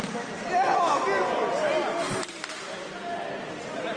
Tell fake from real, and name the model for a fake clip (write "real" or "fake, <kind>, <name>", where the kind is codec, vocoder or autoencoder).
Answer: real